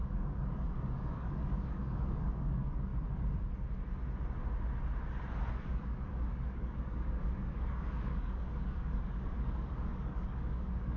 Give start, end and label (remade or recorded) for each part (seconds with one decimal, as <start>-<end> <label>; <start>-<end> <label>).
0.0-2.9 remade; 2.9-5.5 recorded; 5.5-11.0 remade